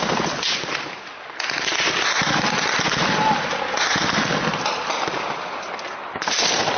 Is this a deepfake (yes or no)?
no